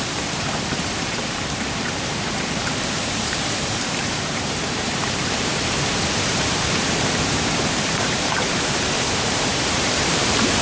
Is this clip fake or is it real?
fake